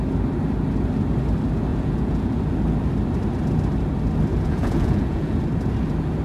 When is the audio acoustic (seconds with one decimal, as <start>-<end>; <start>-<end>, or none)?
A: 0.0-1.7; 2.4-4.3; 5.4-6.2